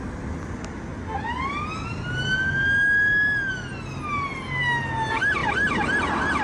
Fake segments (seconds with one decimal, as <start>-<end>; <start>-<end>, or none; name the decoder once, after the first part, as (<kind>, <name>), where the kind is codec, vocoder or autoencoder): none